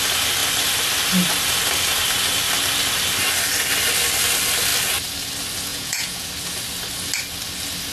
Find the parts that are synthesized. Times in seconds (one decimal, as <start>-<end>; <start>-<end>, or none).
5.7-6.3